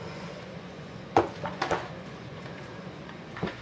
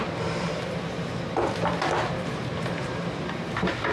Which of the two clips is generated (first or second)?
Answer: first